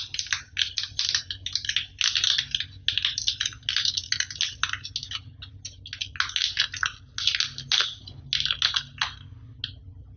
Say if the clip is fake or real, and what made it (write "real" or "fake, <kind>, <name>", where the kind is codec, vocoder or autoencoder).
real